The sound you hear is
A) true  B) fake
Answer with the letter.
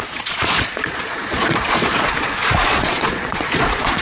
B